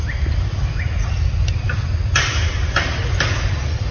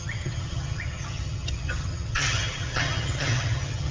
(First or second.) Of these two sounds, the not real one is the second